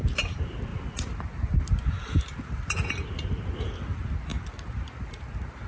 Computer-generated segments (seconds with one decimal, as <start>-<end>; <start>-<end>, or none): none